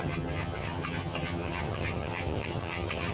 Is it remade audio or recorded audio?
remade